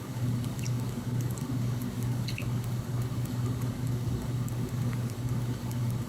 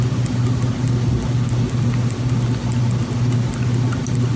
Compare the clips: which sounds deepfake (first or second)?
first